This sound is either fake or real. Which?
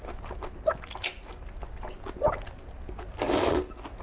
real